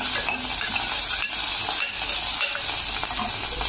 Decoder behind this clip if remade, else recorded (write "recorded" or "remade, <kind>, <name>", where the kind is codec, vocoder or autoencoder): recorded